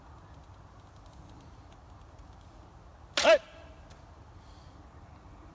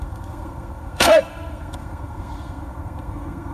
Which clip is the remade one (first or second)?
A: second